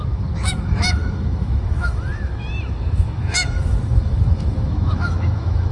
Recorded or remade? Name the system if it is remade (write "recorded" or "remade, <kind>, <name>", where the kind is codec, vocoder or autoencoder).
remade, autoencoder, DAC-VAE